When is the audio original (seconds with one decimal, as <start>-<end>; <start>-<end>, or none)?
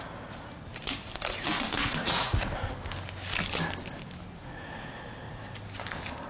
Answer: 0.0-1.8; 2.5-6.3